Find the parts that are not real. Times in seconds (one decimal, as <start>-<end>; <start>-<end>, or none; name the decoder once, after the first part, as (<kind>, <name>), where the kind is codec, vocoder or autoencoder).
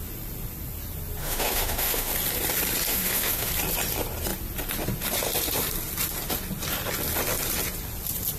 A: 1.2-2.1 (autoencoder, DAC-VAE); 2.9-3.5